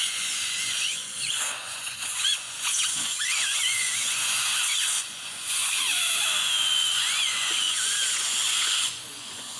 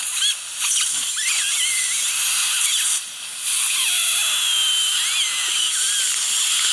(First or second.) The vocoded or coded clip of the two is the first